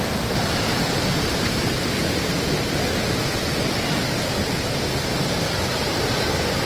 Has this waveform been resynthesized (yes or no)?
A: yes